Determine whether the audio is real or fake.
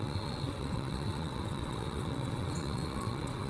fake